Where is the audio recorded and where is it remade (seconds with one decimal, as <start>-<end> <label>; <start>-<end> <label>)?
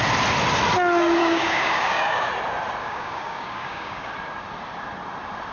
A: 0.0-1.2 recorded; 1.2-2.3 remade; 2.3-2.8 recorded; 2.8-4.1 remade; 4.1-5.5 recorded